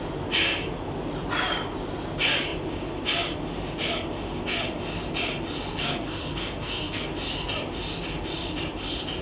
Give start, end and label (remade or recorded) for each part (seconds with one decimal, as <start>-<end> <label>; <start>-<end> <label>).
0.0-5.7 recorded; 5.7-7.1 remade; 7.1-9.2 recorded

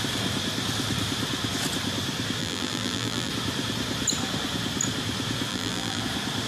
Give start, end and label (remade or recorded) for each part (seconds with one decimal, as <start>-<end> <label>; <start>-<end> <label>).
0.0-2.4 recorded; 2.4-3.3 remade; 3.3-5.5 recorded; 5.5-6.0 remade; 6.0-6.5 recorded

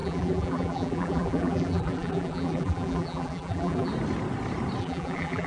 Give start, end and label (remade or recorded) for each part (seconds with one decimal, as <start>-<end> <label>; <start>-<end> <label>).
0.0-3.9 remade; 3.9-4.8 recorded; 4.8-5.5 remade

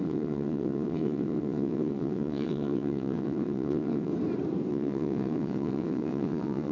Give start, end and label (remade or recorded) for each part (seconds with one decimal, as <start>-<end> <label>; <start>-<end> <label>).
0.0-4.1 remade; 4.1-4.7 recorded; 4.7-6.7 remade

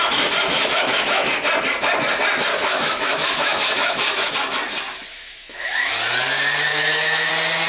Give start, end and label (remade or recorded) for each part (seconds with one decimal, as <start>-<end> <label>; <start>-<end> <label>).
0.0-0.5 recorded; 0.5-1.3 remade; 1.3-2.5 recorded; 2.5-4.3 remade; 4.3-5.1 recorded; 5.1-5.9 remade; 5.9-6.7 recorded; 6.7-7.3 remade; 7.3-7.7 recorded